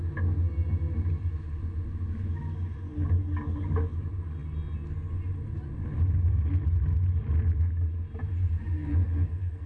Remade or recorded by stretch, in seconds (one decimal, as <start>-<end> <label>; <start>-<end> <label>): 0.0-8.7 recorded; 8.7-9.7 remade